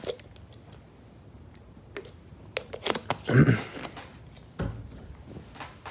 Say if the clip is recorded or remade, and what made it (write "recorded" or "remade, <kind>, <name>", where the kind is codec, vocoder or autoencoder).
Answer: recorded